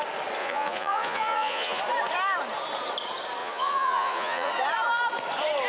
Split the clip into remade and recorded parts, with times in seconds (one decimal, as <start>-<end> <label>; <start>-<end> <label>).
0.0-0.4 recorded; 0.4-1.8 remade; 1.8-3.4 recorded; 3.4-4.5 remade; 4.5-5.7 recorded